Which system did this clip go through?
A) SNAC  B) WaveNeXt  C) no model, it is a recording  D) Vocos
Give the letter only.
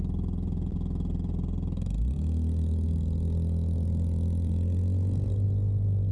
C